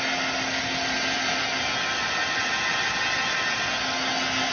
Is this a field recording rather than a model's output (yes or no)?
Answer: yes